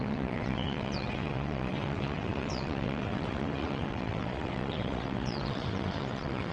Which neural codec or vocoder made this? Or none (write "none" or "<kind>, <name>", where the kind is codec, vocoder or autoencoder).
vocoder, WaveNeXt